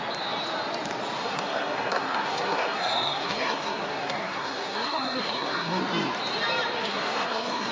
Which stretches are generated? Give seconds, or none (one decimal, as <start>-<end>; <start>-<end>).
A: 1.2-5.8; 6.8-7.7